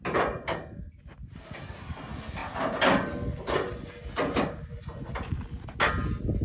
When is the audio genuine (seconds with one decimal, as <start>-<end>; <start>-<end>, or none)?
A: 0.0-6.4